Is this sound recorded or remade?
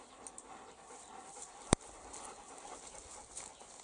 recorded